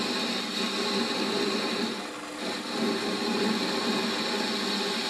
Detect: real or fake real